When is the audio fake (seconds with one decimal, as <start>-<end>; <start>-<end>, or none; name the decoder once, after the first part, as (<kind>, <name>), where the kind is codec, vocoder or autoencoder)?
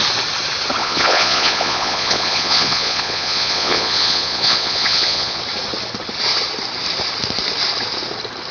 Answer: 0.8-5.4 (vocoder, Vocos)